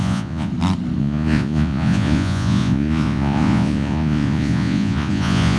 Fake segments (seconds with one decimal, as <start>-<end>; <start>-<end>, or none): 0.0-0.5; 1.0-5.6